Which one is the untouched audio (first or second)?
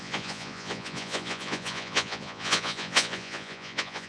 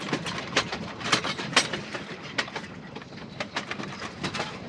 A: second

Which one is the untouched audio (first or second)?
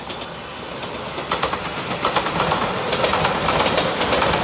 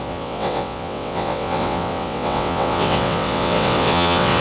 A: first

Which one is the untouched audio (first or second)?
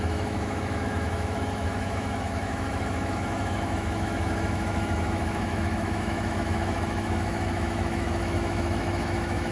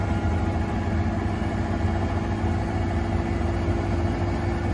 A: second